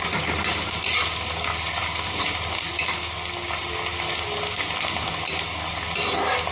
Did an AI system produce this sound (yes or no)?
no